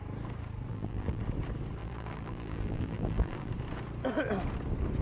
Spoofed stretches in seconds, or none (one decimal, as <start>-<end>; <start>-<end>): 0.7-1.2; 1.8-3.5